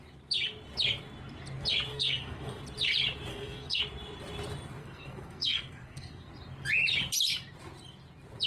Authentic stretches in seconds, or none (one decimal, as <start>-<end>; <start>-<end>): 0.0-1.9; 2.6-3.3; 3.8-4.8; 6.3-8.5